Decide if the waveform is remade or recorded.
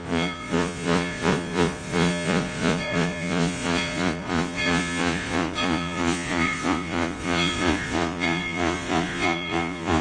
remade